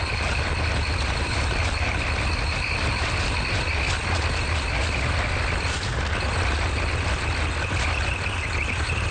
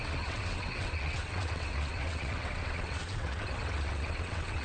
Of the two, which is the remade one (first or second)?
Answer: second